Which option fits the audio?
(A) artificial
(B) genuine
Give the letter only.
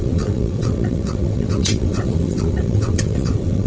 A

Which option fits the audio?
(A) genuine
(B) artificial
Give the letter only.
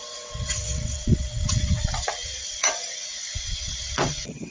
B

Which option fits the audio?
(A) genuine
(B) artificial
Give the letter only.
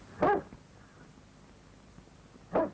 A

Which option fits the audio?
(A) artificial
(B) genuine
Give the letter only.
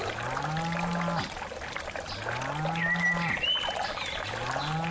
B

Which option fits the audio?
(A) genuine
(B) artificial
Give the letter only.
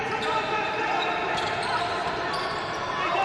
A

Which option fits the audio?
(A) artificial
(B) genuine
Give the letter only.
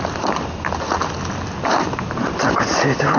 B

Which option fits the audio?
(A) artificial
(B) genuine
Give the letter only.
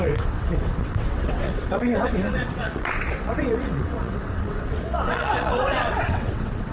A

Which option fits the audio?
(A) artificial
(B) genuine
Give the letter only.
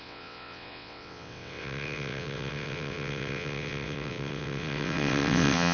A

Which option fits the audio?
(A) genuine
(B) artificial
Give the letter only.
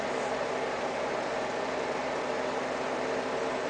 A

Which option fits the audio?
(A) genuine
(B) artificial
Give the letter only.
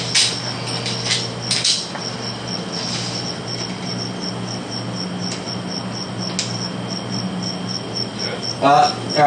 A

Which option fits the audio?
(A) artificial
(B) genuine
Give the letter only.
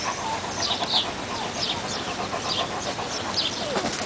B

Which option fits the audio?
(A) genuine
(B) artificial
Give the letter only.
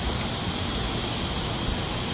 A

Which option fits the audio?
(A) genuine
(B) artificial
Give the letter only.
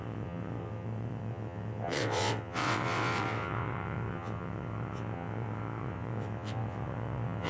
B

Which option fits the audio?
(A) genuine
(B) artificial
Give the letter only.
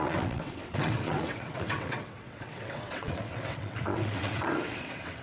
B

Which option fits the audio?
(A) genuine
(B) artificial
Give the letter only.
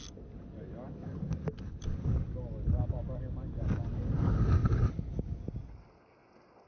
A